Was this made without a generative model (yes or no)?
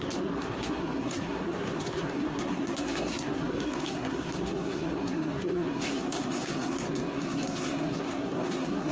no